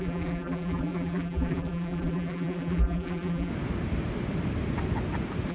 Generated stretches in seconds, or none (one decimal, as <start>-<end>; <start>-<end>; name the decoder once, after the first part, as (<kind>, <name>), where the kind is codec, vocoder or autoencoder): 0.0-3.5 (vocoder, BigVGAN v2)